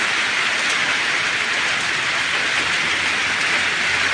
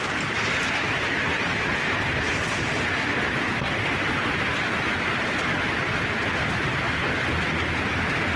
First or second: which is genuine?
second